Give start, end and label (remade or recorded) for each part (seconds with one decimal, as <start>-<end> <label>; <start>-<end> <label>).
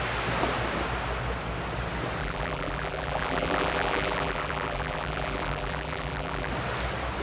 0.0-2.2 recorded; 2.2-6.5 remade; 6.5-7.2 recorded